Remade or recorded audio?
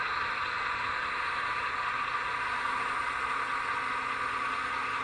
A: recorded